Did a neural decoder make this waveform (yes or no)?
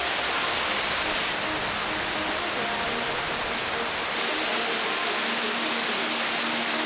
no